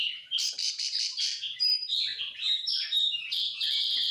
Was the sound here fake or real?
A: fake